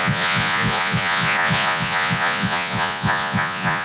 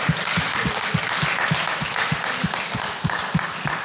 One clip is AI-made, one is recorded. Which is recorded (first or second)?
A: second